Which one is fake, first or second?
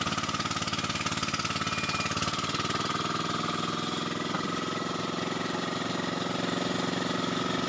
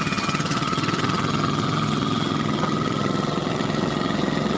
second